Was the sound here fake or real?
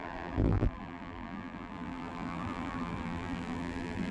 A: fake